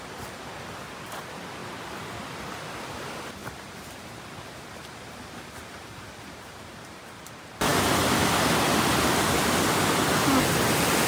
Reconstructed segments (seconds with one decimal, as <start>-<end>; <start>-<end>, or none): 3.4-7.3